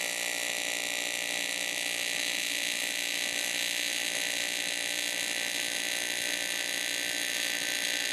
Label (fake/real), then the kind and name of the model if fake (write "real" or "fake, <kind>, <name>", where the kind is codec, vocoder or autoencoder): real